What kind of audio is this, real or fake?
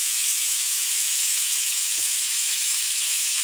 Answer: fake